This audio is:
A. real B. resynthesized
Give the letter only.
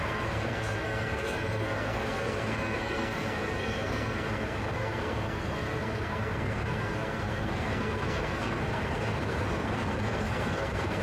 B